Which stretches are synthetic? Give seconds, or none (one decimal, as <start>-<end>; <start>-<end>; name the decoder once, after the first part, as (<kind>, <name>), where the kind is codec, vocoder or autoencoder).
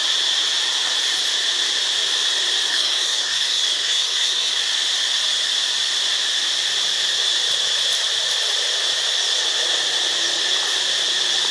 2.7-4.6 (codec, SNAC)